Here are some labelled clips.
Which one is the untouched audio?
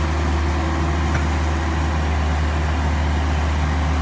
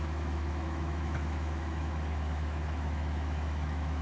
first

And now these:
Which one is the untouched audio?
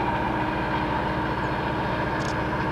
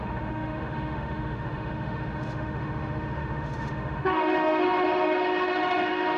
first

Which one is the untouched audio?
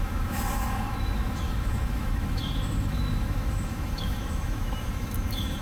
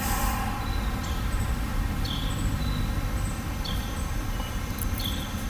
second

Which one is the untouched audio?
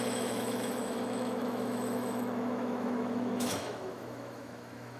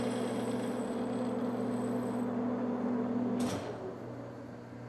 second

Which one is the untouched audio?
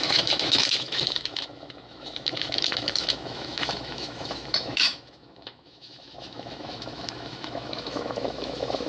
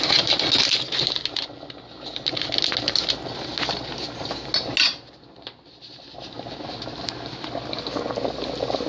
second